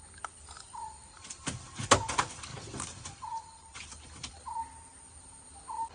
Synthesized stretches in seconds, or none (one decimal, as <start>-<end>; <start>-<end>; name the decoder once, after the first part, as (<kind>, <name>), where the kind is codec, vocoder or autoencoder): none